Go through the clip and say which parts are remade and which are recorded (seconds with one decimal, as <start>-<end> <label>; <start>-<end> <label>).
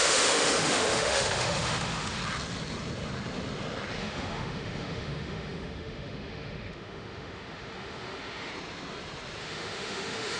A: 0.0-2.2 remade; 2.2-4.0 recorded; 4.0-8.5 remade; 8.5-9.4 recorded; 9.4-10.4 remade